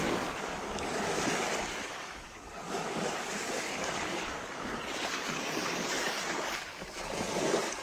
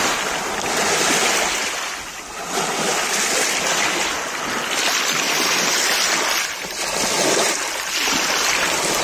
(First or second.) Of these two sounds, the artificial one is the first